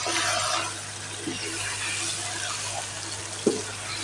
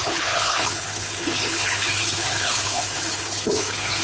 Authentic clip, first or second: first